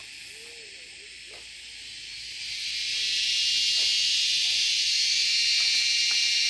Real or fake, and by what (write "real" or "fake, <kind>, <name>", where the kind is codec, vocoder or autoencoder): real